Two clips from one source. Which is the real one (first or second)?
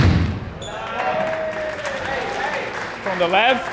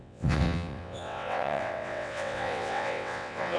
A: first